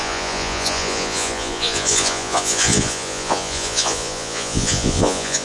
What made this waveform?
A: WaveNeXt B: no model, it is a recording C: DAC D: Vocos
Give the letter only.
D